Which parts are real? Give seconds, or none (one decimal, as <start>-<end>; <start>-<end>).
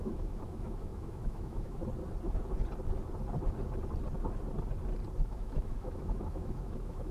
1.8-5.3